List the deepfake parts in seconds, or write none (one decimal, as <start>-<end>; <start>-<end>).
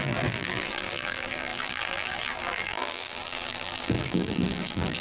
0.0-5.0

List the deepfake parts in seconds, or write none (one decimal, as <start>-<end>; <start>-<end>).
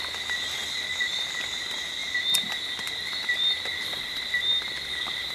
none